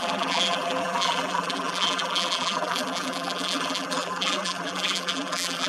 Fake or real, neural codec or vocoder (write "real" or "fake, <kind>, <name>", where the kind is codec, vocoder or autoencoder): fake, vocoder, BigVGAN v2